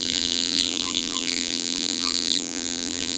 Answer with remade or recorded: remade